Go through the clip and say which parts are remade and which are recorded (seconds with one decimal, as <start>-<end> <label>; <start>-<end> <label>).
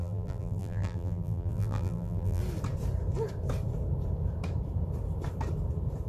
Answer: 0.0-2.4 remade; 2.4-6.1 recorded